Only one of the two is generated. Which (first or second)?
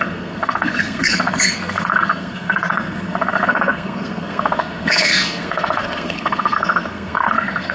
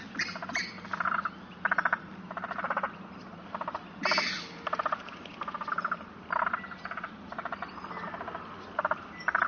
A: first